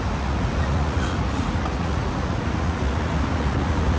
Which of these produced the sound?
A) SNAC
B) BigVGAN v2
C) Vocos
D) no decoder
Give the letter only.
C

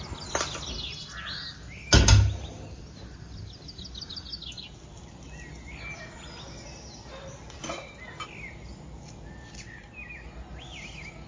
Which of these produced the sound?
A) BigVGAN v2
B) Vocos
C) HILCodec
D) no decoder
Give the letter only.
D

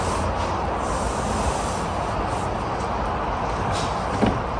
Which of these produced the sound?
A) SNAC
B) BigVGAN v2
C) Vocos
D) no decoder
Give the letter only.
D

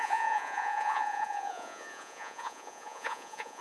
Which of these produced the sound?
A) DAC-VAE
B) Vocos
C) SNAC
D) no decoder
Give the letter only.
B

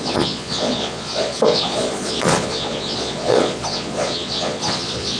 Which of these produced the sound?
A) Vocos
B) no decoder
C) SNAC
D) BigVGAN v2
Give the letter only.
A